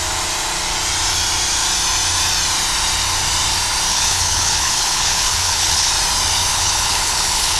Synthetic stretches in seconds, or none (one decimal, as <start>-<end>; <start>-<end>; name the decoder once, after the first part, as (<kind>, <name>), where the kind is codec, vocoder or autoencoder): 3.9-5.9 (codec, HILCodec); 6.5-7.6